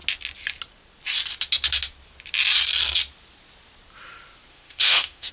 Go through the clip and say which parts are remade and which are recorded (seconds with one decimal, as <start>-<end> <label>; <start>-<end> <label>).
0.0-4.5 recorded; 4.5-5.3 remade